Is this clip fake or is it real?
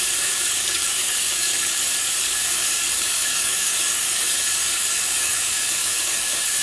fake